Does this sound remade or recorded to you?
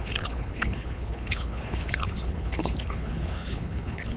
remade